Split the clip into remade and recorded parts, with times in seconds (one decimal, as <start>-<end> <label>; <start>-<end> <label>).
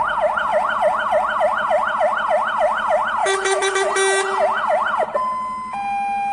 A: 0.0-3.2 recorded; 3.2-3.9 remade; 3.9-6.3 recorded